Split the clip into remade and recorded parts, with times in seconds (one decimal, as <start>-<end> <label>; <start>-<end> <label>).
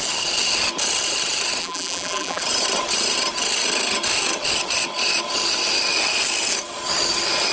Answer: 0.0-1.6 recorded; 1.6-2.4 remade; 2.4-7.5 recorded